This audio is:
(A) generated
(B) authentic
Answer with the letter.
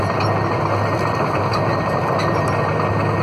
B